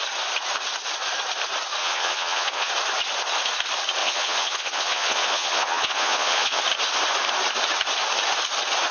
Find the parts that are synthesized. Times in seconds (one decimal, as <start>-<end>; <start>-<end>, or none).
1.8-2.7; 4.0-6.6